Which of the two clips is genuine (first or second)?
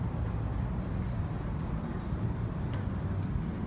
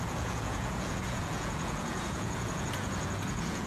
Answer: first